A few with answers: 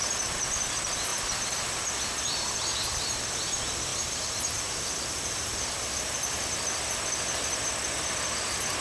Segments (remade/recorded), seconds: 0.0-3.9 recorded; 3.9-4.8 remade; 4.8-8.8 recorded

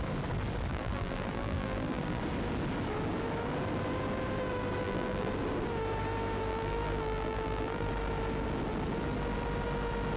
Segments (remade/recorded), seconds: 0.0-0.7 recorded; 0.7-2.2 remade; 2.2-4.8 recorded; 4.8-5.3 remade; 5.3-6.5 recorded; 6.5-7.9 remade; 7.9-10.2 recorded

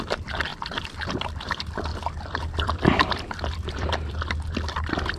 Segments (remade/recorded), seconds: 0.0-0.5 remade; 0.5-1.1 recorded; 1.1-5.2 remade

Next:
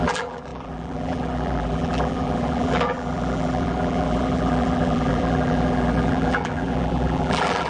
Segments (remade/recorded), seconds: 0.0-7.7 remade

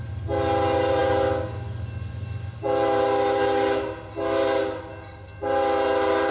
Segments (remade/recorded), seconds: 0.0-6.3 recorded

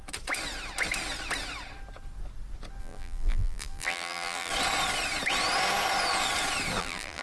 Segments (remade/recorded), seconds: 0.0-2.8 recorded; 2.8-4.5 remade; 4.5-6.8 recorded; 6.8-7.2 remade

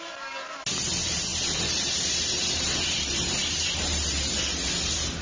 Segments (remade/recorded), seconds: 0.0-1.3 recorded; 1.3-4.4 remade; 4.4-5.2 recorded

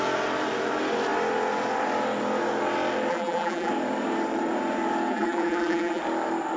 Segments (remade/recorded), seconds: 0.0-3.1 recorded; 3.1-3.7 remade; 3.7-5.1 recorded; 5.1-6.0 remade; 6.0-6.6 recorded